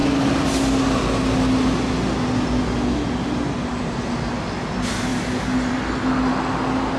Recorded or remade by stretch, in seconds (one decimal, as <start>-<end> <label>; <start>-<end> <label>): 0.0-7.0 recorded